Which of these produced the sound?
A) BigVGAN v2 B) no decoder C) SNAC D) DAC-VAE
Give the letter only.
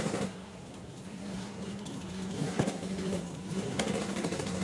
C